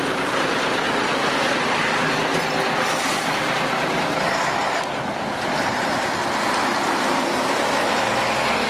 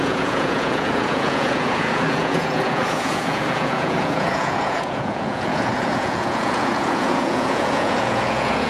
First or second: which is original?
first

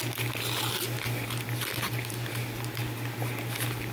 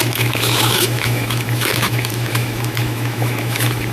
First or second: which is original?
first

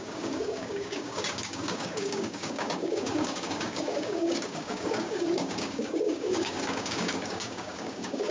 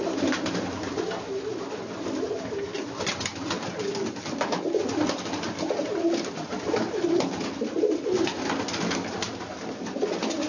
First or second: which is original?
second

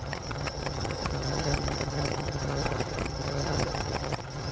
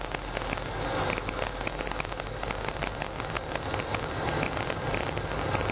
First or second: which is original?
second